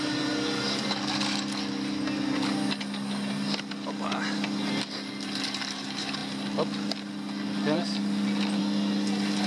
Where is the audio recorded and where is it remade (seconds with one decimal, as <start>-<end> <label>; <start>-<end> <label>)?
0.0-9.5 recorded